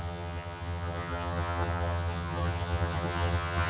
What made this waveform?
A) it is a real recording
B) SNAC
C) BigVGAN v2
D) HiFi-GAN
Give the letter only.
D